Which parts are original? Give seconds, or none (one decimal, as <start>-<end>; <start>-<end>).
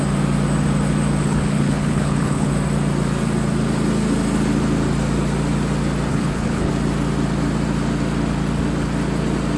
0.0-1.2; 2.5-6.1; 6.7-9.6